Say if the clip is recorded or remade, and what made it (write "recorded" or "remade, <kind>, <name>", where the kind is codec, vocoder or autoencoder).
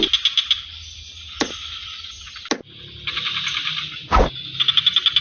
recorded